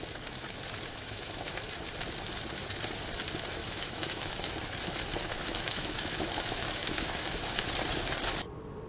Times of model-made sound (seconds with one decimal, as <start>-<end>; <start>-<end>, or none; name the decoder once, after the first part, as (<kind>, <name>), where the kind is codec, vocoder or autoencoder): 0.9-1.6 (autoencoder, DAC-VAE); 3.6-4.5; 5.4-7.7